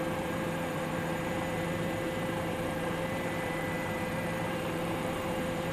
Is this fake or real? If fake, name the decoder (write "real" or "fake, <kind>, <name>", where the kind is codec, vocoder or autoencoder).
fake, vocoder, BigVGAN v2